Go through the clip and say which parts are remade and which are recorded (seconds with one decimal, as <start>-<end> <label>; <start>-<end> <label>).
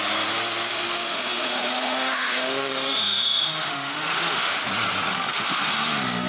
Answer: 0.0-0.7 recorded; 0.7-4.5 remade; 4.5-5.1 recorded; 5.1-6.3 remade